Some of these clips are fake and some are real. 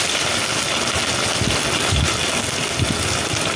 real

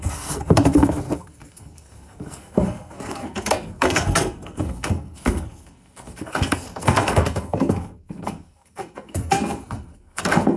fake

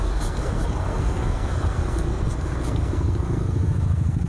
fake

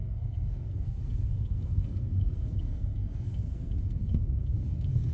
fake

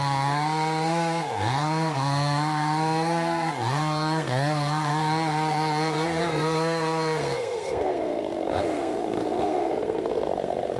fake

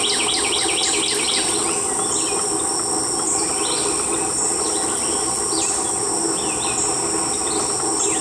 real